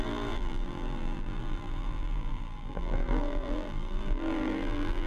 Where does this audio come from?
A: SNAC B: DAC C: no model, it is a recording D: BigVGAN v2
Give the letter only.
D